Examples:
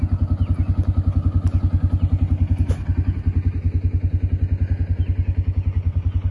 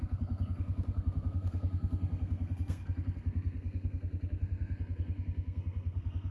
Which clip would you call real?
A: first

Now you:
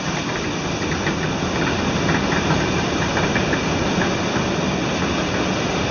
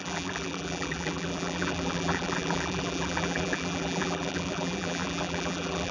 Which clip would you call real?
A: first